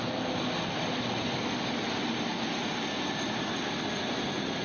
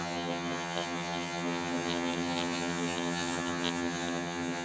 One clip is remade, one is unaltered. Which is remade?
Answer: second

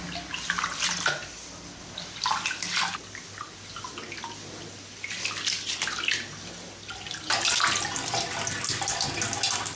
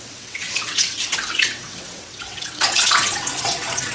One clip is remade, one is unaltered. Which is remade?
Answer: second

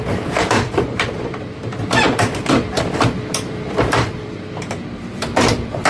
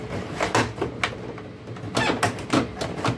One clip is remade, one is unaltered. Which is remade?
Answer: first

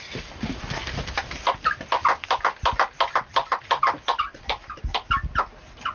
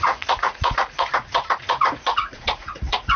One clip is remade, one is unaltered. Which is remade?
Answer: second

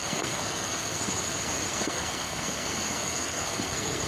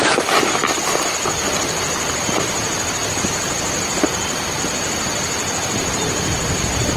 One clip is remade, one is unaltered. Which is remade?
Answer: first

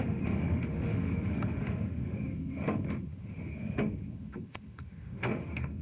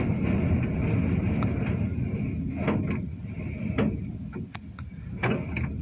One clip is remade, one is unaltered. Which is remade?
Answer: first